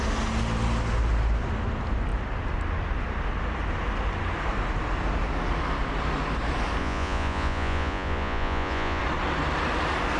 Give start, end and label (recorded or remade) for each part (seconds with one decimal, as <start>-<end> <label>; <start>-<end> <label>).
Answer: 0.0-6.8 recorded; 6.8-9.0 remade; 9.0-10.2 recorded